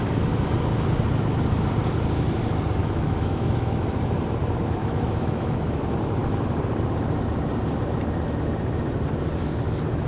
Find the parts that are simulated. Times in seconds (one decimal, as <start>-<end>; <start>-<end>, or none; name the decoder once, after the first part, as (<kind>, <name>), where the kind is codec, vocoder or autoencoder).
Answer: 2.8-3.9 (autoencoder, DAC-VAE); 4.8-5.8